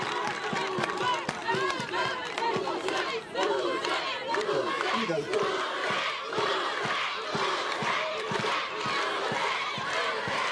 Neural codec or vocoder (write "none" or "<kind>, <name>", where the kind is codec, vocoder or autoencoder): vocoder, BigVGAN v2